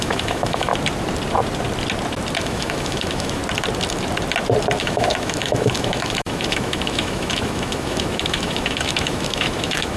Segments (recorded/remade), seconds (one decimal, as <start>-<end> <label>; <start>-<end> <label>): 0.0-0.7 remade; 0.7-2.4 recorded; 2.4-3.4 remade; 3.4-4.8 recorded; 4.8-10.0 remade